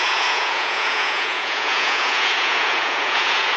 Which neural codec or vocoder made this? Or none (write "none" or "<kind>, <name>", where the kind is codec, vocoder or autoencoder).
vocoder, Vocos